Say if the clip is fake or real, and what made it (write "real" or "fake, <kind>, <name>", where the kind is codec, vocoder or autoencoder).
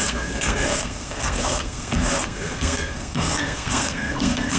fake, codec, SNAC